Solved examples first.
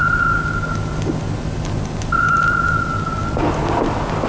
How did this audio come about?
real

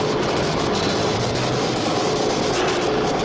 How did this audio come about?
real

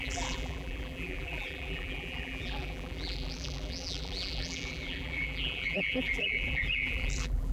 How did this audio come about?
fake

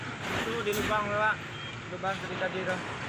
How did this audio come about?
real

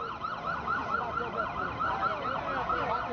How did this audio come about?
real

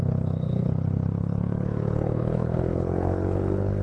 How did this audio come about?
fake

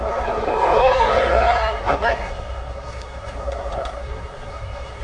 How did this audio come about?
fake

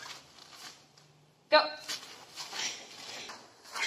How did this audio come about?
real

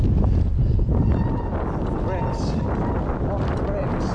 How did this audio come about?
real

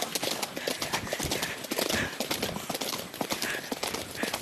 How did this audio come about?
real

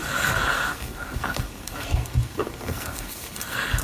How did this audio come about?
fake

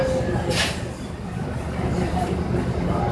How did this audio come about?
real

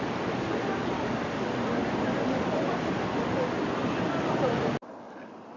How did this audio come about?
real